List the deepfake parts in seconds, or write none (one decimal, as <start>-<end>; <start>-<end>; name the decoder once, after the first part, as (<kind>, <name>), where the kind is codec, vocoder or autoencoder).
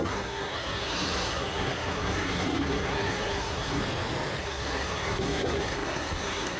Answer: 0.0-3.8 (codec, SNAC); 4.4-6.6